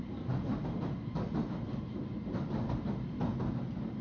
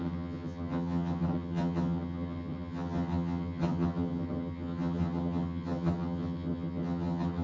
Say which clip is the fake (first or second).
second